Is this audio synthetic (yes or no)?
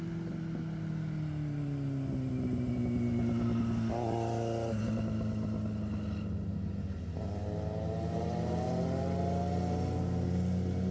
no